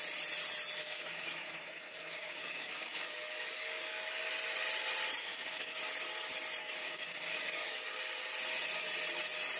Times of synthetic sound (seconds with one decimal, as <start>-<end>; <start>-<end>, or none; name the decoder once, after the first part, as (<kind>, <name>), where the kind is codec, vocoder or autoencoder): 0.8-4.2 (codec, DAC); 5.2-5.8; 6.6-8.0